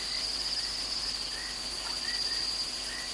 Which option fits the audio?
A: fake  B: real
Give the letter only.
B